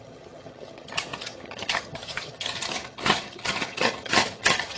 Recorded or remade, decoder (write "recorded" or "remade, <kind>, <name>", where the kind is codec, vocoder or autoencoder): remade, vocoder, HiFi-GAN